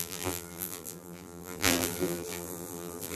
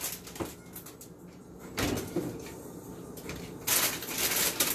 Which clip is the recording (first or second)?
second